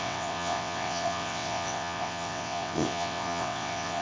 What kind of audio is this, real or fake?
fake